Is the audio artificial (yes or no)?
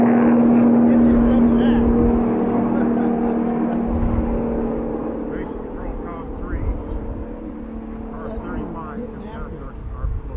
no